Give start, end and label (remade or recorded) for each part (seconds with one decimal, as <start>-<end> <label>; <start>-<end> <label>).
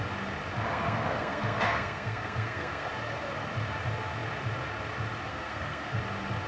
0.0-0.7 recorded; 0.7-2.9 remade; 2.9-5.3 recorded; 5.3-6.0 remade; 6.0-6.5 recorded